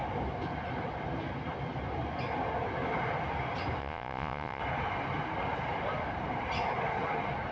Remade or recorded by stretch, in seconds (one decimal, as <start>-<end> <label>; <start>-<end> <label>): 0.0-3.8 recorded; 3.8-4.6 remade; 4.6-7.5 recorded